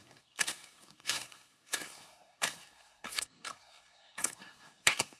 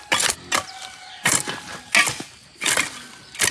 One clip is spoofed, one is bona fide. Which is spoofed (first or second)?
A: first